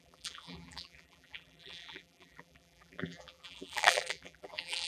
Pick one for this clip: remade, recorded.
remade